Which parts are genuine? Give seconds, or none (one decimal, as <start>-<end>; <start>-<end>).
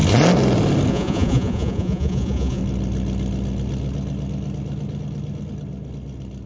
0.0-0.9; 2.6-6.5